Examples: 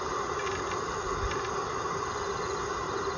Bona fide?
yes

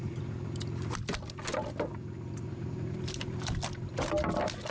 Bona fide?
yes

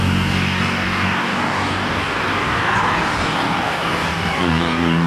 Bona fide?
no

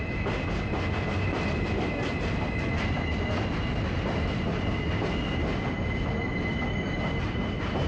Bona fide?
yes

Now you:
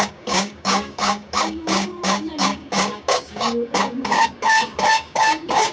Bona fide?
no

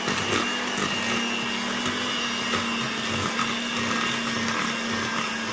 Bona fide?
yes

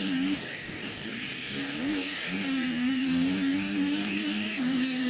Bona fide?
no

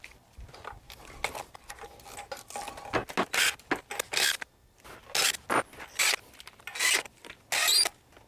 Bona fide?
yes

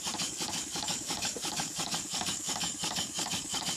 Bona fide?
no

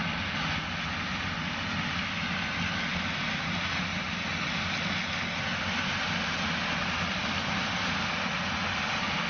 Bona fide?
yes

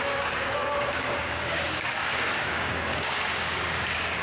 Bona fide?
no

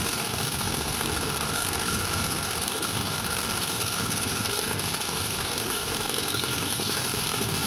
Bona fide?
no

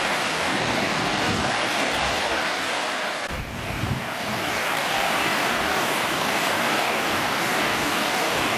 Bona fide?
no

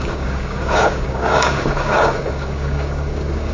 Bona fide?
no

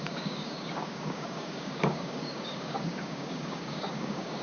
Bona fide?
no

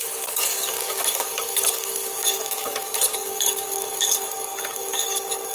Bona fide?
no